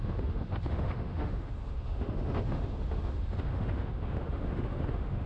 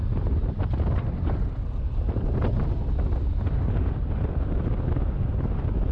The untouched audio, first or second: second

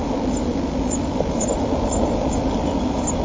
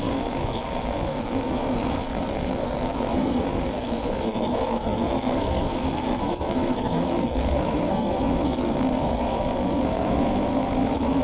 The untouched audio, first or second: first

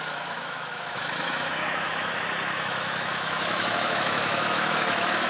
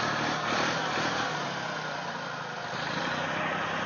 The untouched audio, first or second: second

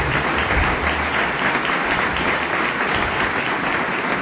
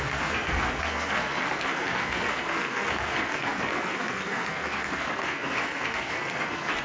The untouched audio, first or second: first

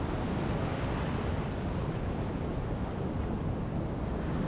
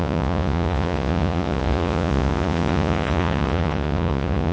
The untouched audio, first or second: first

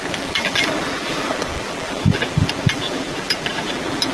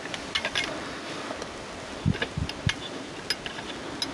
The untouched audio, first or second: second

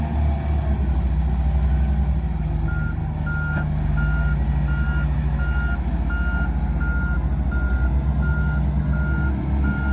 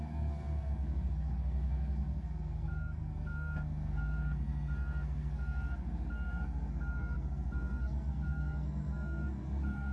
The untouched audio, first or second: first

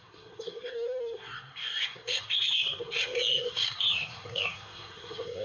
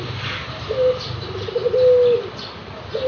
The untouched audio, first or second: second